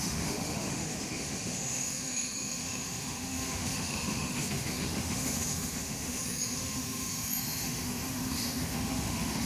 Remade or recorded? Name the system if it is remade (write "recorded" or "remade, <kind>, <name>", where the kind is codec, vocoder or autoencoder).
remade, autoencoder, DAC-VAE